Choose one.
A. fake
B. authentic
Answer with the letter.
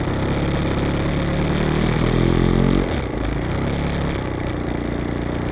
B